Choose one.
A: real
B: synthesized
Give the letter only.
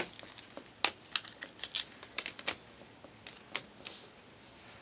A